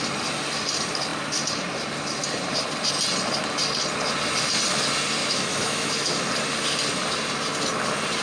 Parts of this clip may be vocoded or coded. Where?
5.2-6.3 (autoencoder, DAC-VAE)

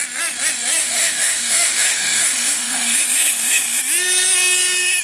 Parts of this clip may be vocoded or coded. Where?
0.8-3.8 (autoencoder, DAC-VAE)

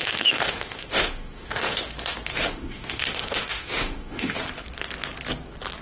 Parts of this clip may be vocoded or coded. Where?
0.0-1.8 (autoencoder, DAC-VAE); 2.3-4.4

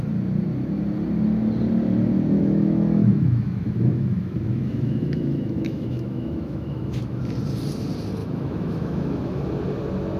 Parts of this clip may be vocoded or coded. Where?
2.4-7.2 (autoencoder, DAC-VAE); 8.2-9.5

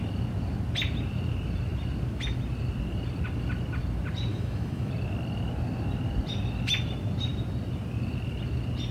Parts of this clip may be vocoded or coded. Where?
4.3-4.9 (autoencoder, DAC-VAE)

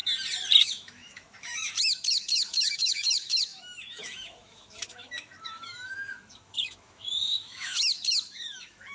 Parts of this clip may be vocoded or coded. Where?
0.6-8.9 (autoencoder, DAC-VAE)